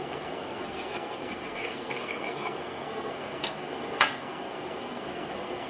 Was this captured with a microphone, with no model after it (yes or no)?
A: no